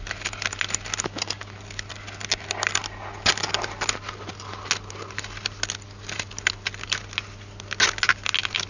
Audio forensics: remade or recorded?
recorded